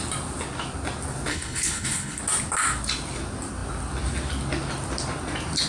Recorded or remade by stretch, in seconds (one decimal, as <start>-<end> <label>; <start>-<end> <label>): 0.0-1.3 recorded; 1.3-2.2 remade; 2.2-5.7 recorded